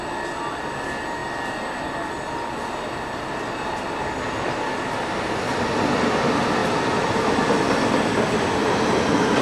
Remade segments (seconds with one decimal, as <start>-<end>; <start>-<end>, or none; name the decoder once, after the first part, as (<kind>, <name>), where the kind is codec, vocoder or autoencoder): 8.6-9.4 (vocoder, BigVGAN v2)